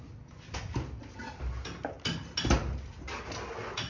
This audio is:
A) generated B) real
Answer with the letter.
B